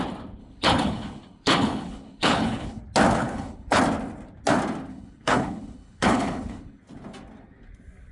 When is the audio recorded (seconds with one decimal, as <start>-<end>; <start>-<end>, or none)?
0.0-0.4; 2.8-3.2; 3.8-4.9; 6.8-8.1